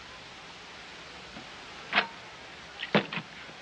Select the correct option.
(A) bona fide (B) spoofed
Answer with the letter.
A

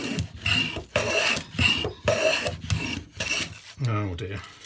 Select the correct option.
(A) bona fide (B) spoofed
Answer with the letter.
A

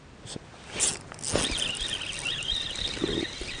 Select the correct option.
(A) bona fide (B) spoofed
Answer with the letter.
A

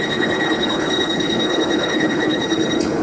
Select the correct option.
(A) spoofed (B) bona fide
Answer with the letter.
A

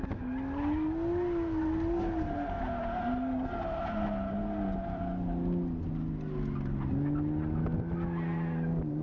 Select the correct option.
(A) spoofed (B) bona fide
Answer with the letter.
B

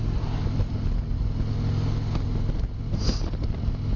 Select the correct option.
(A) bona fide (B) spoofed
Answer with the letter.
A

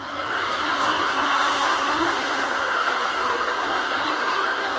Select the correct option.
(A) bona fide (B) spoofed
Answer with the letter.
B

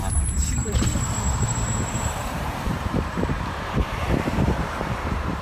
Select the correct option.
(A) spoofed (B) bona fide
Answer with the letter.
A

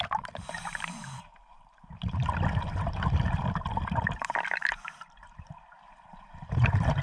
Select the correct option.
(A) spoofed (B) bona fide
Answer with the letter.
A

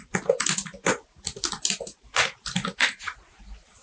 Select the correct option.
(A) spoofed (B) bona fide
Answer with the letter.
B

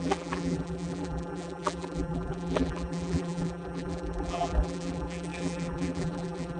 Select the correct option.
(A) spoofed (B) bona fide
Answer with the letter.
A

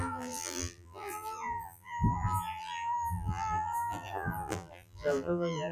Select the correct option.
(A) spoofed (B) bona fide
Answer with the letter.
A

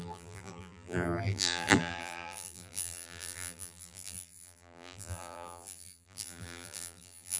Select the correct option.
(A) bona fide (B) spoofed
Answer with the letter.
B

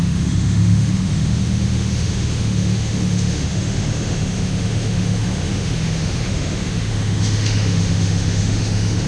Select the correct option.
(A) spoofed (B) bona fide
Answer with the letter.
A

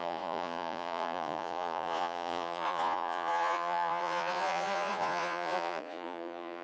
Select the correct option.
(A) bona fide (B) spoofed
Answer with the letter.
B